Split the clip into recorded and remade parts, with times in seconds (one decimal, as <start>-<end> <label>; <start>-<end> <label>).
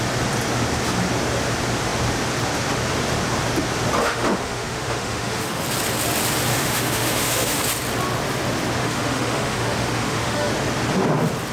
0.0-4.0 recorded; 4.0-5.6 remade; 5.6-6.5 recorded; 6.5-7.6 remade; 7.6-8.8 recorded; 8.8-10.5 remade; 10.5-11.5 recorded